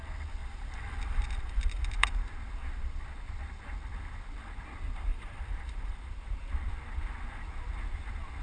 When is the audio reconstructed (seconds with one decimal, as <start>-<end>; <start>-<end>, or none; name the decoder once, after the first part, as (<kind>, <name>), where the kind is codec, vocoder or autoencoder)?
0.4-2.0 (vocoder, BigVGAN v2); 5.1-6.1